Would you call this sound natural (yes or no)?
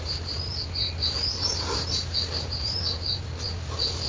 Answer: yes